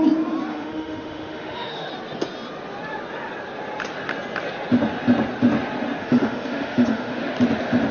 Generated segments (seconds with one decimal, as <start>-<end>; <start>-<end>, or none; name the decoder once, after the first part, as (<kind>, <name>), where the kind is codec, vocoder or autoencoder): 0.5-1.9 (autoencoder, DAC-VAE); 6.0-7.2

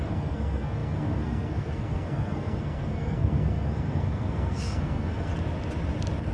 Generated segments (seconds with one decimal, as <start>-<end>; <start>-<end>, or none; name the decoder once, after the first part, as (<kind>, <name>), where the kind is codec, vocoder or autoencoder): 0.0-5.3 (codec, SNAC)

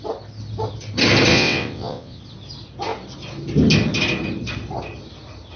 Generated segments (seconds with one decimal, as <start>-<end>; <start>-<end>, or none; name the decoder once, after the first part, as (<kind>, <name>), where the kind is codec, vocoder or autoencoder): 1.3-2.2 (vocoder, WaveNeXt)

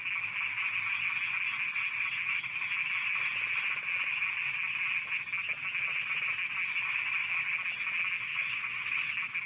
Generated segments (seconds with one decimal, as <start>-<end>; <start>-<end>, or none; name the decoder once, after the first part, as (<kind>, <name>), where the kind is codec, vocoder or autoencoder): 8.3-9.1 (vocoder, Vocos)

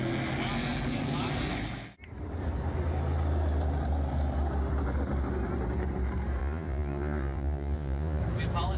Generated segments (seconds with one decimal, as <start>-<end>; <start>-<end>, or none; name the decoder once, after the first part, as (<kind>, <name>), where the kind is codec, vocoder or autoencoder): 6.4-8.2 (vocoder, Vocos)

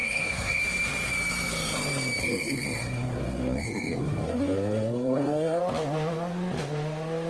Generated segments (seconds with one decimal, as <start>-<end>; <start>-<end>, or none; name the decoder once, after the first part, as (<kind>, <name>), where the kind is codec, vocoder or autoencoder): 0.0-0.6 (codec, SNAC); 2.2-5.6

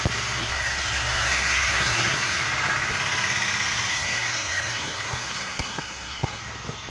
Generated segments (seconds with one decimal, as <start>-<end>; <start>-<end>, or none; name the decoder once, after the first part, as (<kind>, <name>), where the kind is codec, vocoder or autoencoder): 0.4-2.4 (codec, SNAC); 3.9-6.4

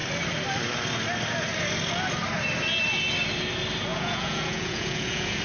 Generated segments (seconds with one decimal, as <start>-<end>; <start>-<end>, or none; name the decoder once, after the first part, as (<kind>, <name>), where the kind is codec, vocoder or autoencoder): 3.9-5.4 (vocoder, Vocos)